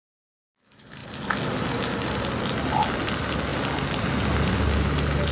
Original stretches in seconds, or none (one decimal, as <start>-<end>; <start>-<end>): 0.0-5.3